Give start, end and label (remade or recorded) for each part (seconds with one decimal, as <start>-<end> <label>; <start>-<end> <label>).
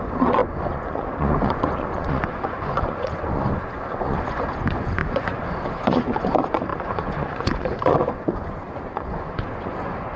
0.0-10.2 remade